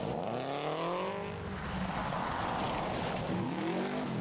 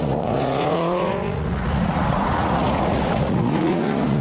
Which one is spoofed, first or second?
second